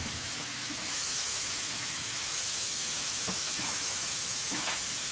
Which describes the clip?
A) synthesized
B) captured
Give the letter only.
A